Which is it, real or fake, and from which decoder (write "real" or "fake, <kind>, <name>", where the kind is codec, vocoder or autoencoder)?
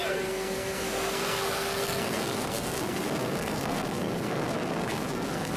fake, codec, SNAC